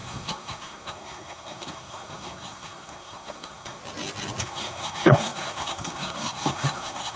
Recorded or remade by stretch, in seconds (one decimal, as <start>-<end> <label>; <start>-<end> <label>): 0.0-3.8 remade; 3.8-4.4 recorded; 4.4-7.2 remade